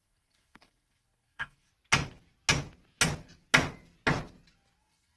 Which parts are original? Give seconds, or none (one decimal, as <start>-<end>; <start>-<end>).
1.7-4.8

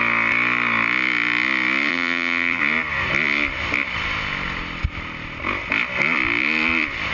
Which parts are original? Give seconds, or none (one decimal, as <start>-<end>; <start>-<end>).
0.0-1.9; 2.6-7.1

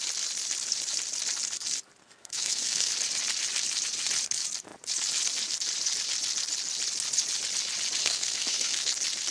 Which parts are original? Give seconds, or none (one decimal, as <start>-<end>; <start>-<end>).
0.0-2.0; 2.9-8.0; 8.9-9.3

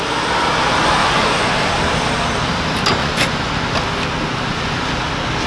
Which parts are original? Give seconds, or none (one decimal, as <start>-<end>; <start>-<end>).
0.0-1.0; 1.7-3.0; 3.5-4.5; 5.0-5.5

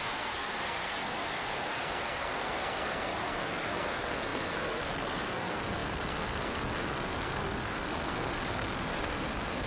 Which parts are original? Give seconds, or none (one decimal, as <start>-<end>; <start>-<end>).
none

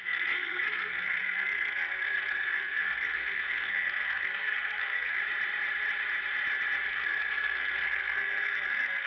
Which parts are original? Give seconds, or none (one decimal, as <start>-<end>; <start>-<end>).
5.2-6.9